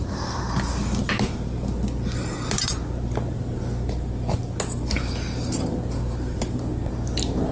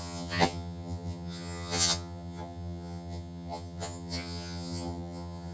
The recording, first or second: first